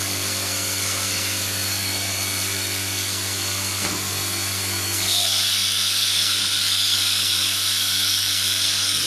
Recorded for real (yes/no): no